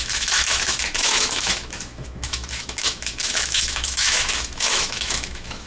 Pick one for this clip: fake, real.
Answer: fake